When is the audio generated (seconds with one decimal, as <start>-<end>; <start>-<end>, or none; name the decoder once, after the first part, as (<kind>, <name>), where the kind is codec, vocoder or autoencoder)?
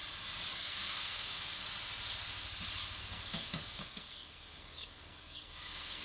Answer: 0.5-1.6 (codec, SNAC); 3.0-6.0